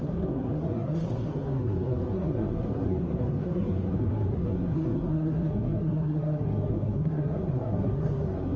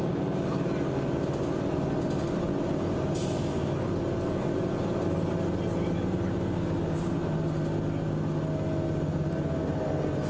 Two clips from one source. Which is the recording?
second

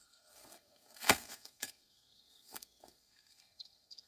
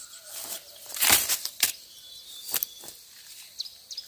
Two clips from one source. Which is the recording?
second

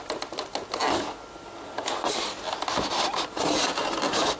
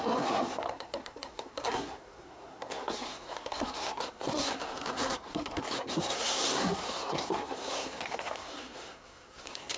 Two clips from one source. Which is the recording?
first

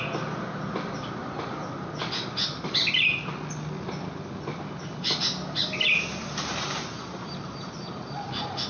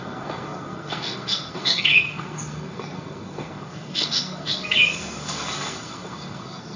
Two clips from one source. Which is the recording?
first